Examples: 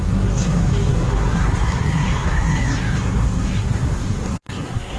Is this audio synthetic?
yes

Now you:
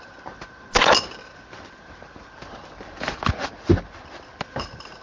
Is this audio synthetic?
no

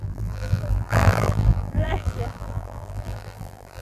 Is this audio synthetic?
yes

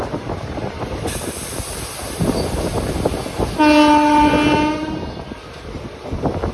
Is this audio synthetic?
no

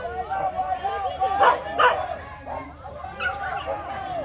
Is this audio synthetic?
no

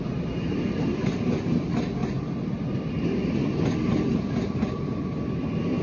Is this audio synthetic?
no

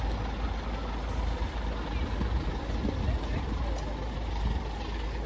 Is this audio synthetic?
no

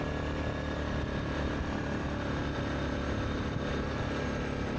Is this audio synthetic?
no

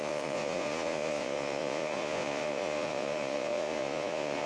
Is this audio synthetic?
yes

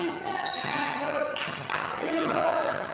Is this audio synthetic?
yes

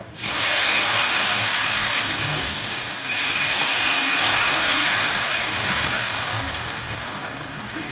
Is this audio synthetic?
yes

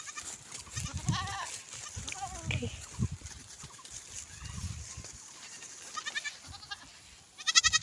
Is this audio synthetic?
no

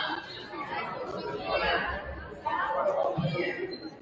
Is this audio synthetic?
no